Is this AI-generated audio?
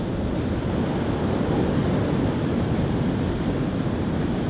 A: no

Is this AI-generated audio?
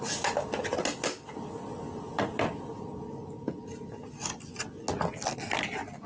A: no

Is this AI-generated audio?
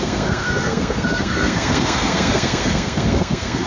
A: yes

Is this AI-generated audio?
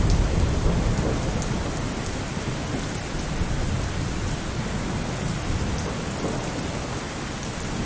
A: no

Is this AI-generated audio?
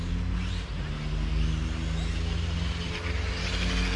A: no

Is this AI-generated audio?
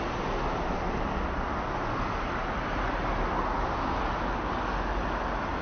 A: no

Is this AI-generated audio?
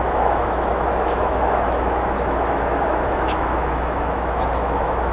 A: yes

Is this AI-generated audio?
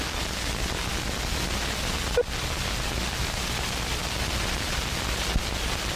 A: no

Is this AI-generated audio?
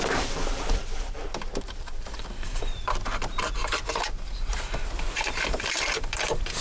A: yes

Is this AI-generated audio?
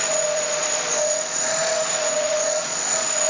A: yes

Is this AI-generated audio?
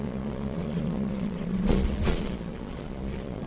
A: yes